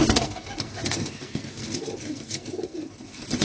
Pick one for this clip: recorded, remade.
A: remade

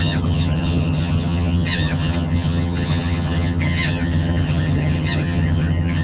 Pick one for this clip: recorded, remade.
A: remade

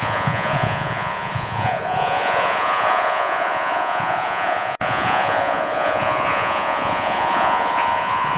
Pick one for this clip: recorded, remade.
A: remade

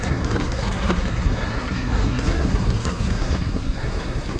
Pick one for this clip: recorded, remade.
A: remade